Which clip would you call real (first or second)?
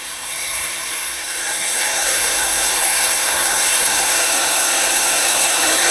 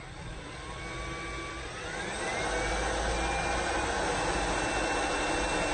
second